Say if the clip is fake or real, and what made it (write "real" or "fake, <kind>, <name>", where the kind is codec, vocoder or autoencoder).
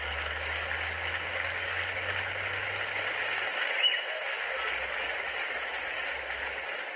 real